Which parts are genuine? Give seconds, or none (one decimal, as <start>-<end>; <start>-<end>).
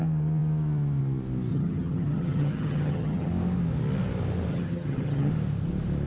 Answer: 0.0-1.5; 3.3-4.5; 5.3-6.1